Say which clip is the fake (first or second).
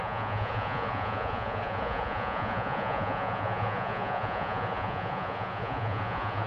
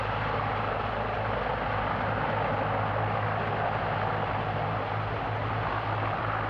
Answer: first